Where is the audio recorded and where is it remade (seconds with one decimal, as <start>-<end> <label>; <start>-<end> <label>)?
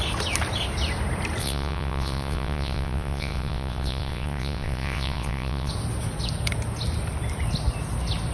0.0-1.4 recorded; 1.4-5.7 remade; 5.7-8.3 recorded